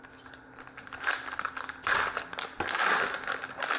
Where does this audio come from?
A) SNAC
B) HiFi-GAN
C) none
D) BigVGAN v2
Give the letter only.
C